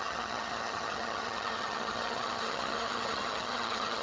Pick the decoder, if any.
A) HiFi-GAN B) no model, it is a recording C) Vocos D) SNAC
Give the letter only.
A